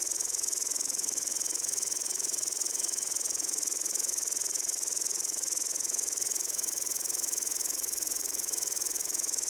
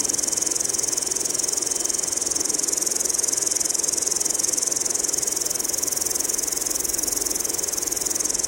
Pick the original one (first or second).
second